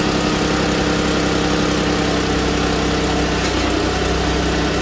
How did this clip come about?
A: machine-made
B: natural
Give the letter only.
B